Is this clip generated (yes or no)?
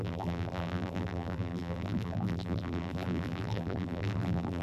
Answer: yes